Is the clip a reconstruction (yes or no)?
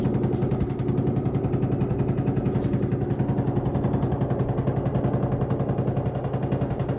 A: no